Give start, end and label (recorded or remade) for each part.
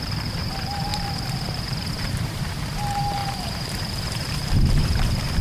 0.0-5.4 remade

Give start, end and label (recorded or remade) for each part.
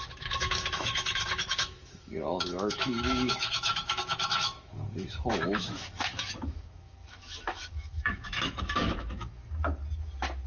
0.0-9.4 remade; 9.4-10.5 recorded